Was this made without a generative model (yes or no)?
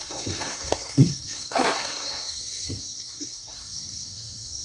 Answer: no